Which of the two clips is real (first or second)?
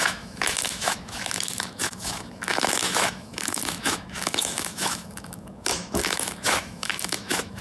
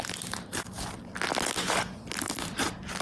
second